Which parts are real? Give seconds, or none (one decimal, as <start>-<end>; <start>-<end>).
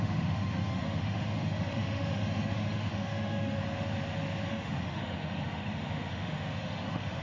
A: 3.6-4.5